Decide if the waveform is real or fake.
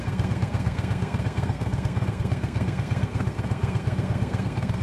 fake